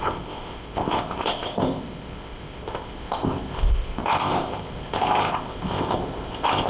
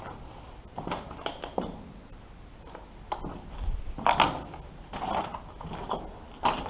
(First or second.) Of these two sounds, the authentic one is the second